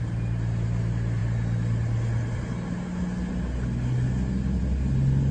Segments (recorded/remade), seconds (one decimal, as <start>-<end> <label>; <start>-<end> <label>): 0.0-5.3 recorded